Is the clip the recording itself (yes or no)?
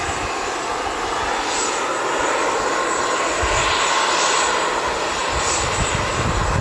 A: yes